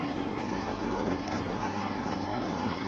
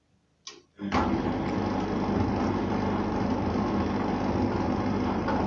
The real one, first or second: second